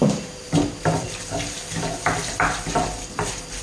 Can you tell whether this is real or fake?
real